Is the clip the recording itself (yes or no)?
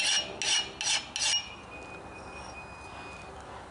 yes